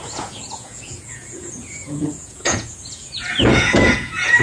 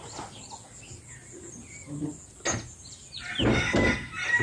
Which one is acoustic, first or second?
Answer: second